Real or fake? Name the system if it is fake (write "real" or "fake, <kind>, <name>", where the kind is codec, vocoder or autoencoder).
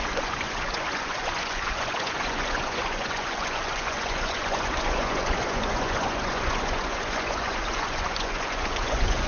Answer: fake, vocoder, Vocos